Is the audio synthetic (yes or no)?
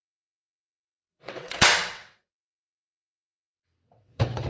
yes